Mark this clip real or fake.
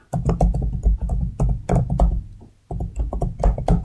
real